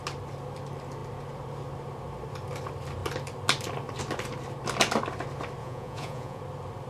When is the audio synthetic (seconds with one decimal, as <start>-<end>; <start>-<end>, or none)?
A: 5.6-6.4